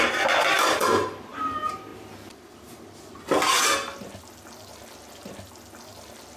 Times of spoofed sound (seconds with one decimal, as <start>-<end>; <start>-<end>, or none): 0.0-0.8; 1.3-1.9; 4.2-6.4